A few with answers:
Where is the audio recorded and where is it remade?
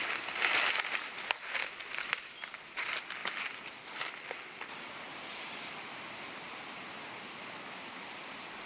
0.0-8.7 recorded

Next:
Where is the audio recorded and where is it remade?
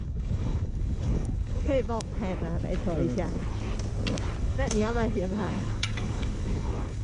0.0-2.1 remade; 2.1-4.4 recorded; 4.4-7.0 remade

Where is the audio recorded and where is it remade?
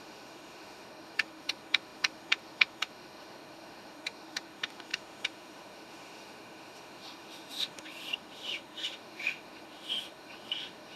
0.0-11.0 remade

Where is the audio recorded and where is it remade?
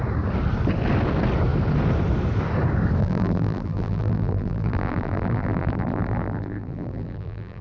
0.0-3.0 recorded; 3.0-7.6 remade